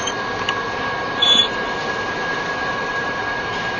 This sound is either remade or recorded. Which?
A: remade